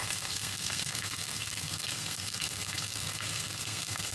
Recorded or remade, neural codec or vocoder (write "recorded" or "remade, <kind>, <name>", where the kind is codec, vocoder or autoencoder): remade, codec, SNAC